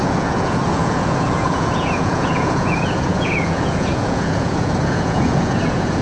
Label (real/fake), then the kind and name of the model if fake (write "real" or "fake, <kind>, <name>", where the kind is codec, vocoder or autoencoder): fake, vocoder, Vocos